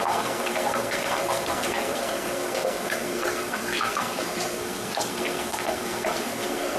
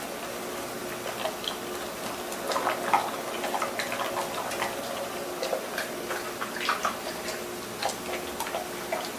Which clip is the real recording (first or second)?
second